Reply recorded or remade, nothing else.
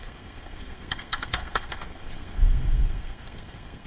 remade